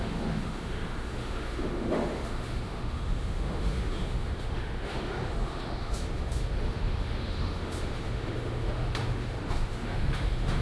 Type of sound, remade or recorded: remade